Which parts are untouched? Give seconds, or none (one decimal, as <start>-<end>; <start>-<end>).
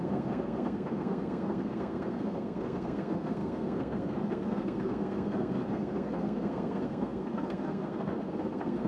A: none